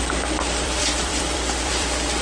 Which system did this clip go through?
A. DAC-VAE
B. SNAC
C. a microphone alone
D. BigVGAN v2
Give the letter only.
D